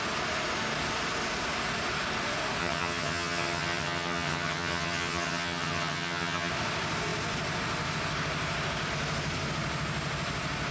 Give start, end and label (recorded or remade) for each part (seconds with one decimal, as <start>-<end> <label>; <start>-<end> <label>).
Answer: 0.0-2.6 recorded; 2.6-6.5 remade; 6.5-10.7 recorded